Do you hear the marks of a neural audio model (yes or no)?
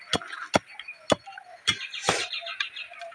no